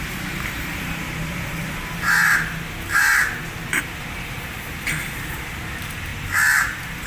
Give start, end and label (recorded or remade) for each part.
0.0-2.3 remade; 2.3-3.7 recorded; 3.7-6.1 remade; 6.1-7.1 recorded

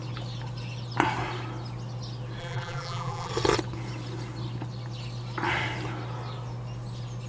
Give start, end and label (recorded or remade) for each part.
0.0-2.4 recorded; 2.4-3.3 remade; 3.3-7.3 recorded

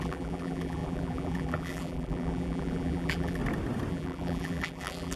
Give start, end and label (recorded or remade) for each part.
0.0-3.4 remade; 3.4-3.9 recorded; 3.9-5.2 remade